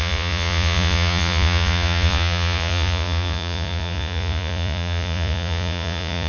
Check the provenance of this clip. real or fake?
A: fake